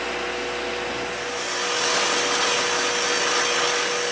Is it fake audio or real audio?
real